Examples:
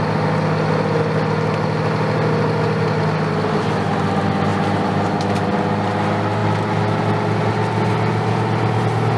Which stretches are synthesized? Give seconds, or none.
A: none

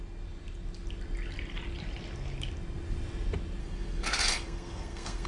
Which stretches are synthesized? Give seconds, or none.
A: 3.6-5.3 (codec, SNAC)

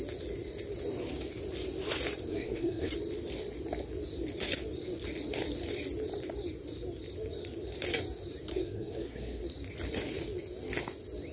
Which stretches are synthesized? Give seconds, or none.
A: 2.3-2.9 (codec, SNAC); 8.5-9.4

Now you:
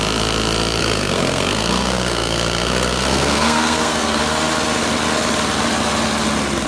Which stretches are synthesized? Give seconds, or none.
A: 0.8-4.2 (codec, SNAC)

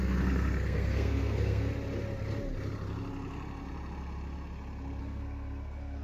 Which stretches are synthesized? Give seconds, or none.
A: 0.0-1.7 (codec, SNAC); 5.0-6.0